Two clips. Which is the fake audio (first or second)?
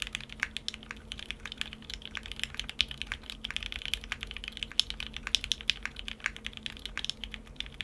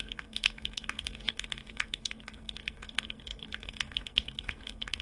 second